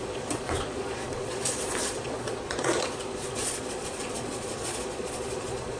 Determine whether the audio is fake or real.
fake